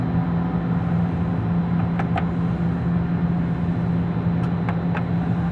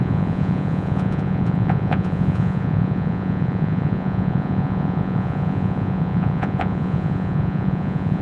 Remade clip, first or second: second